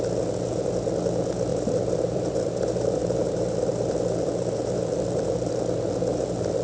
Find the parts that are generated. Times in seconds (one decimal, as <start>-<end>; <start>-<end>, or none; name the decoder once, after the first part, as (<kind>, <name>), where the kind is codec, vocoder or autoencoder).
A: 1.5-5.5 (vocoder, BigVGAN v2)